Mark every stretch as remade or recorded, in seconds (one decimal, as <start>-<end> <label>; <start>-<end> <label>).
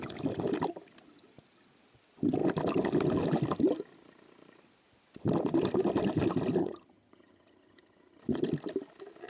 0.0-6.6 recorded; 6.6-8.2 remade; 8.2-9.3 recorded